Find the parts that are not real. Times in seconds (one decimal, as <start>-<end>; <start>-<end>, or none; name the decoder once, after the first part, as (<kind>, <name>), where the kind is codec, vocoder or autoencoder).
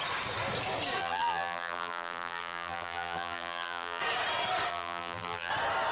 1.0-4.0 (vocoder, BigVGAN v2); 4.7-5.5